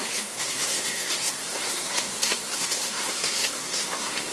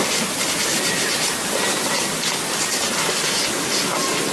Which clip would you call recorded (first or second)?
second